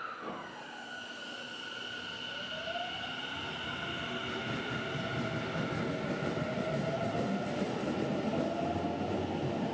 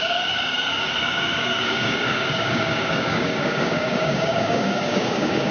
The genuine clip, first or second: first